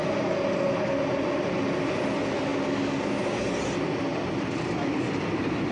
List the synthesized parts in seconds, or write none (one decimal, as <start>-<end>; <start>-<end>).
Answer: none